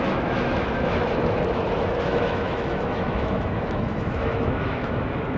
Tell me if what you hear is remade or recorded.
remade